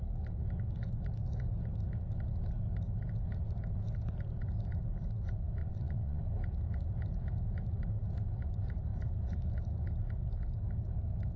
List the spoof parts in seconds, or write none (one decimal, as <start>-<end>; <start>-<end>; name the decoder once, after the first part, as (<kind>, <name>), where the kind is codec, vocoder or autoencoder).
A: 5.6-6.2 (vocoder, WaveNeXt)